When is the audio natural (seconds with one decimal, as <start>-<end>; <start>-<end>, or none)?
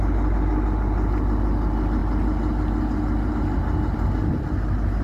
0.0-5.0